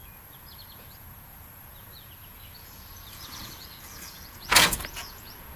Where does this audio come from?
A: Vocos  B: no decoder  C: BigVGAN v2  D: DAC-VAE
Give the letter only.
A